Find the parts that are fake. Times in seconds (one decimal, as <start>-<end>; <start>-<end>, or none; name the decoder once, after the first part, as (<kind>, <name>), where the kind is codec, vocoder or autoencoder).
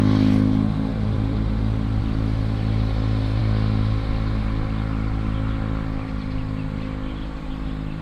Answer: 0.9-2.0 (vocoder, BigVGAN v2)